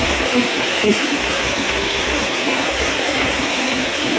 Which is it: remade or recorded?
remade